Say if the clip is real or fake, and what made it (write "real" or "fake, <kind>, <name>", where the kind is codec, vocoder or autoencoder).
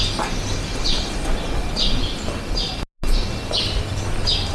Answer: real